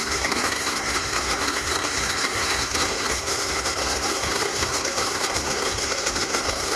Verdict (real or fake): fake